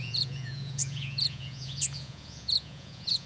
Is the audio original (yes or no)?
no